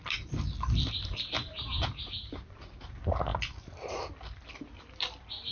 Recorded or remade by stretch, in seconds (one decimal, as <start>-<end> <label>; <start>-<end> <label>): 0.0-2.9 remade; 2.9-5.5 recorded